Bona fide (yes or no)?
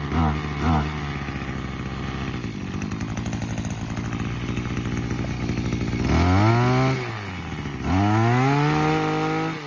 yes